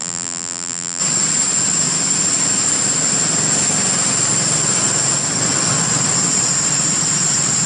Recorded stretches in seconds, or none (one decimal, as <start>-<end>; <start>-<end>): 1.0-7.7